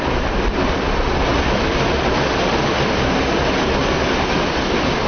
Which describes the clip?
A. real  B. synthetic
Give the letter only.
B